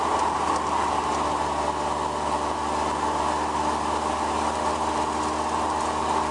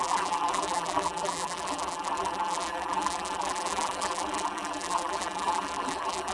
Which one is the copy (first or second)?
second